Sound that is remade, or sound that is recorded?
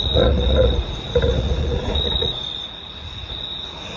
remade